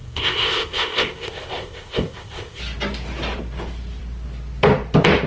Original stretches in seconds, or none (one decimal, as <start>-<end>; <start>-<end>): 2.6-5.3